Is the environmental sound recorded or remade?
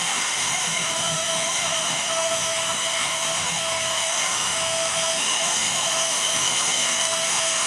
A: remade